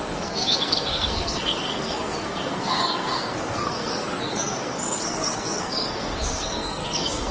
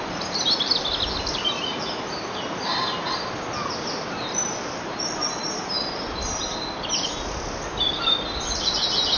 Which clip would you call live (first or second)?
second